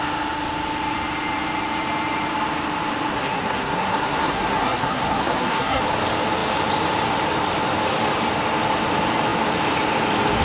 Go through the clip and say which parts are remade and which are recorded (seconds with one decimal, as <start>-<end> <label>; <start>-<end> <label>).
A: 0.0-3.1 recorded; 3.1-5.8 remade; 5.8-10.4 recorded